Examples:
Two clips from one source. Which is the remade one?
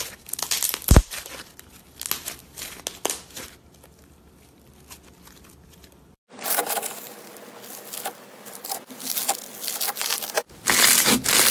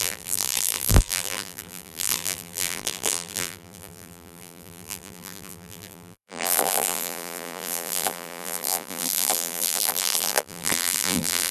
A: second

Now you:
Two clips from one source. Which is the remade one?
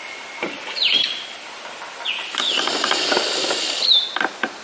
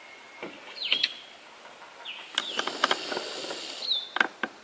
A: first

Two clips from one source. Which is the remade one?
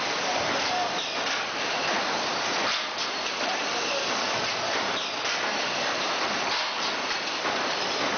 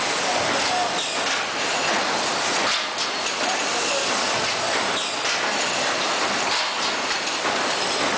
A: first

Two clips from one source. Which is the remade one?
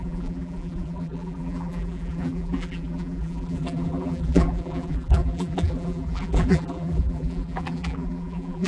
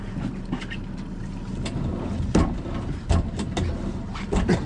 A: first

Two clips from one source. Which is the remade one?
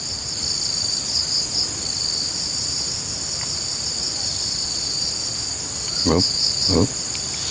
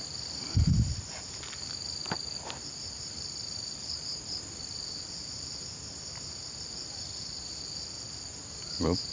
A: second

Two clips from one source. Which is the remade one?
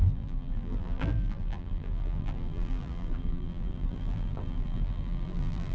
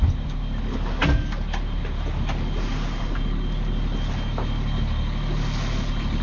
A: first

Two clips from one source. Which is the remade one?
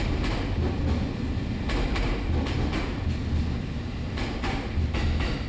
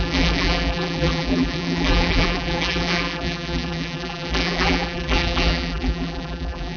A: second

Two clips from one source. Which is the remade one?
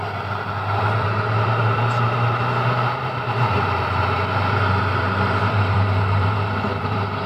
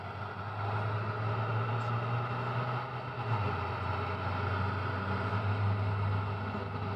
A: first